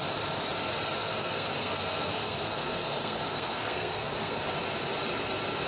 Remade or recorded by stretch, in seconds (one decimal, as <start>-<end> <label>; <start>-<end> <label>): 0.0-1.0 recorded; 1.0-4.4 remade; 4.4-5.7 recorded